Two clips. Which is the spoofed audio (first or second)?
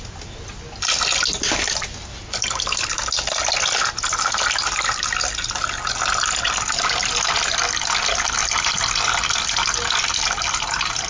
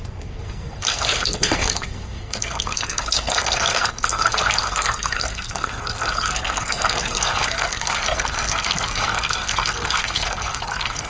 second